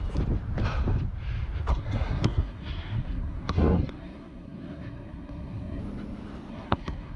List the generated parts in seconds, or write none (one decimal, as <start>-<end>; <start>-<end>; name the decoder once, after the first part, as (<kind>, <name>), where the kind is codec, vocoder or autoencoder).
1.7-5.8 (codec, SNAC); 6.5-7.2

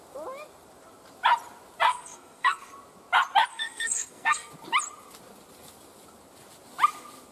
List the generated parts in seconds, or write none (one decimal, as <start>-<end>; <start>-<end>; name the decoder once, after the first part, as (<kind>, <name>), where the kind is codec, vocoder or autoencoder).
1.9-2.7 (codec, SNAC); 3.5-4.5

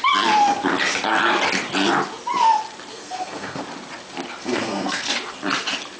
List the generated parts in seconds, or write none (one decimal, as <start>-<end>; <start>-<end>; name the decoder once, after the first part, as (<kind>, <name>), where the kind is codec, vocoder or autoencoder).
2.9-3.6 (codec, SNAC); 4.4-5.1

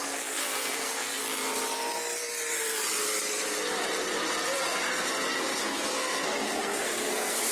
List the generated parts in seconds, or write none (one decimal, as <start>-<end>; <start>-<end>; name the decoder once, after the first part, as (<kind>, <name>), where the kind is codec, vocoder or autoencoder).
0.0-1.2 (codec, SNAC); 5.6-7.5